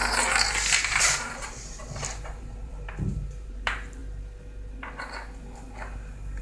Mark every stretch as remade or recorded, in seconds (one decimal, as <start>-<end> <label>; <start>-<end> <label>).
0.0-1.0 recorded; 1.0-1.8 remade; 1.8-2.4 recorded; 2.4-4.0 remade; 4.0-6.4 recorded

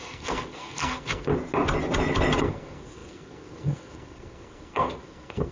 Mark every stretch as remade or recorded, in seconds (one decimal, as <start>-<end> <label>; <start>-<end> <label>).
0.0-1.3 remade; 1.3-2.4 recorded; 2.4-5.5 remade